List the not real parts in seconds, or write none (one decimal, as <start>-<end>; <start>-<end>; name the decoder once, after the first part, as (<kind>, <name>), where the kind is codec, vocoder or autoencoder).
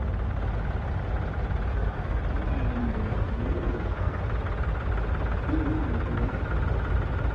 1.7-2.2 (codec, SNAC); 2.8-4.2; 5.8-6.4